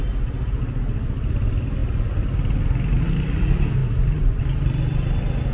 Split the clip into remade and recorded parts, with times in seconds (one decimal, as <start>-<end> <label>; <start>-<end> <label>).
0.0-3.8 recorded; 3.8-4.4 remade; 4.4-5.5 recorded